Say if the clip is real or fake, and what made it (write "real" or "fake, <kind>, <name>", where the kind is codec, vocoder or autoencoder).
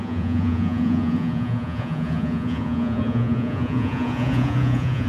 fake, vocoder, Vocos